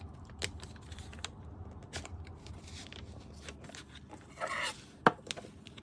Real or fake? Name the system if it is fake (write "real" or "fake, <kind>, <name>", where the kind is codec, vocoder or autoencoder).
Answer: real